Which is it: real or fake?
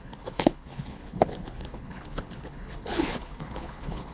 fake